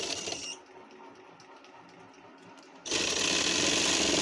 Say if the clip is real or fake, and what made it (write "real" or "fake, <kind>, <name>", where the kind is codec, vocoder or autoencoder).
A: real